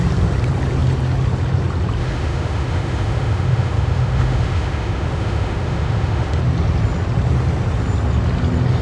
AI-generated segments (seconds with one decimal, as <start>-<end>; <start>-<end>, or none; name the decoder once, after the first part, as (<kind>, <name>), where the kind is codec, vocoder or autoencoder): 2.0-6.4 (autoencoder, DAC-VAE)